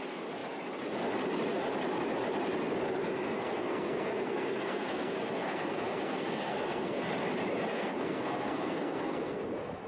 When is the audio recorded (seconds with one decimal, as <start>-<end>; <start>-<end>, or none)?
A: 0.0-3.0; 7.0-7.7; 9.4-9.9